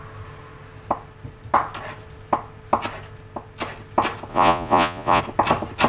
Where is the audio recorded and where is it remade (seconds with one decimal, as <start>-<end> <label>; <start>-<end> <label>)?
0.0-4.3 recorded; 4.3-5.2 remade; 5.2-5.9 recorded

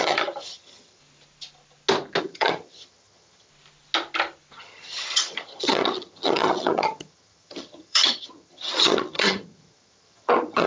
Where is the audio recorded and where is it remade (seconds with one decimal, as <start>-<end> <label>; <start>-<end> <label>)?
0.0-1.0 remade; 1.0-2.2 recorded; 2.2-3.5 remade; 3.5-4.6 recorded; 4.6-10.7 remade

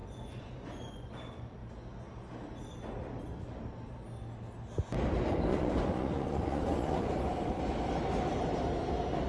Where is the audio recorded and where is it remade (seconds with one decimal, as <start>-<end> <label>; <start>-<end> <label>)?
0.0-1.1 remade; 1.1-5.5 recorded; 5.5-7.1 remade; 7.1-9.3 recorded

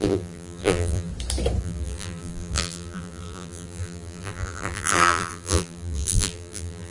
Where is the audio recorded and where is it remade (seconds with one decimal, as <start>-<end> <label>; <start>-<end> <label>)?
0.0-1.1 remade; 1.1-1.6 recorded; 1.6-6.9 remade

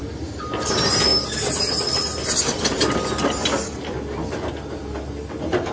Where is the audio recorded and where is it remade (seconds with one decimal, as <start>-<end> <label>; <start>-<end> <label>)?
0.0-0.7 remade; 0.7-5.7 recorded

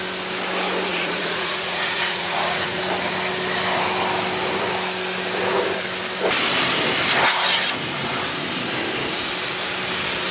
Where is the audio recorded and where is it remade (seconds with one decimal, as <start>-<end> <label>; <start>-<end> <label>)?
0.0-0.9 recorded; 0.9-2.8 remade; 2.8-10.3 recorded